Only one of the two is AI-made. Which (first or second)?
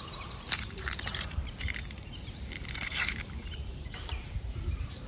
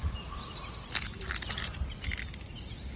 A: first